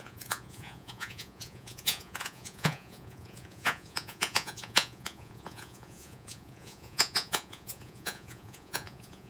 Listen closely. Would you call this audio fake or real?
fake